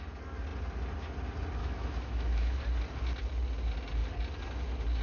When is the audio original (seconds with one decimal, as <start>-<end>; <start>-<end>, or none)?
0.0-1.6; 2.6-5.0